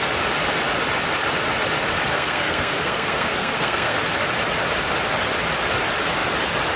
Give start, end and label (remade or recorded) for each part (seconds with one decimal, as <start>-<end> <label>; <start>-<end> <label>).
0.0-2.1 recorded; 2.1-4.0 remade; 4.0-6.8 recorded